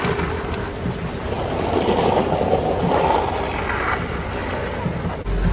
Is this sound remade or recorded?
recorded